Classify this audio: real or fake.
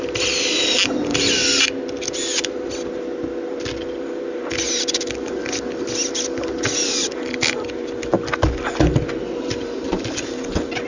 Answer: real